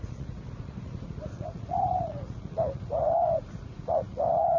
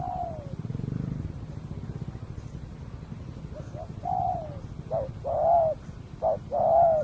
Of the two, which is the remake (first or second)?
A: first